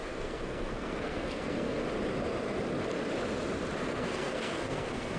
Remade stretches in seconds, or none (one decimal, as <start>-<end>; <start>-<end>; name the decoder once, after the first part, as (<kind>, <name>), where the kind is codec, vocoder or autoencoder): 0.0-1.8 (codec, SNAC); 3.8-5.2